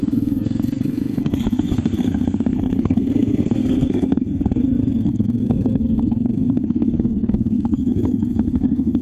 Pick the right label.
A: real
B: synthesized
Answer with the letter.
B